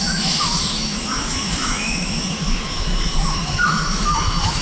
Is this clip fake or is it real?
fake